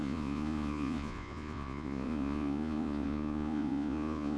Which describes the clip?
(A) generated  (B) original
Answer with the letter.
A